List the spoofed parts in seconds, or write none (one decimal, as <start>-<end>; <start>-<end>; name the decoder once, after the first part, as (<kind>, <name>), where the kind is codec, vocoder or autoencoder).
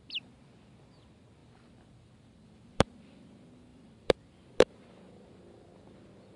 1.4-3.0 (vocoder, BigVGAN v2); 3.7-4.7